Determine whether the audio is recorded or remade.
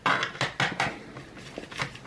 recorded